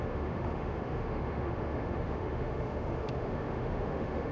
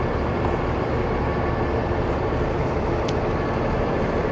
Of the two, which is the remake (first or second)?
first